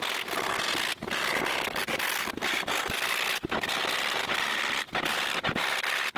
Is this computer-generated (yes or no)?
no